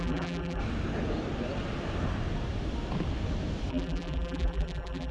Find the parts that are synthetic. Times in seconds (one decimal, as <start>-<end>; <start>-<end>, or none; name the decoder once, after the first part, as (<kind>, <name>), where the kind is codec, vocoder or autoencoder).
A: 0.0-0.6 (vocoder, BigVGAN v2); 3.7-5.1